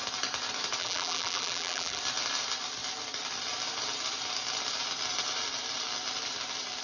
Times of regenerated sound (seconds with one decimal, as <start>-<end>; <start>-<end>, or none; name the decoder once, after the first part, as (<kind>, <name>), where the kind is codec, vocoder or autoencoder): 0.8-2.0 (vocoder, BigVGAN v2)